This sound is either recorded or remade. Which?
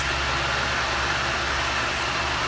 recorded